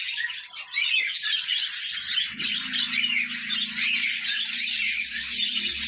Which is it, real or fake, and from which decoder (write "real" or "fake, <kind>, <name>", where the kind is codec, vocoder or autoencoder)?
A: real